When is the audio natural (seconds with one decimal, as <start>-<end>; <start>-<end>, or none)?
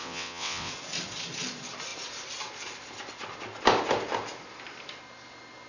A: 0.7-5.7